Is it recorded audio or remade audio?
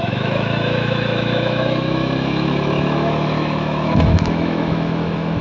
remade